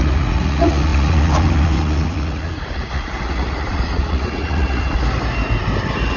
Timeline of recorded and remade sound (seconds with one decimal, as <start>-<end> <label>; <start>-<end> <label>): 0.0-5.0 remade; 5.0-6.2 recorded